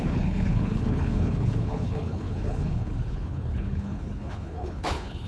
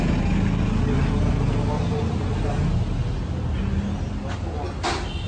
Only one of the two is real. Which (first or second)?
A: second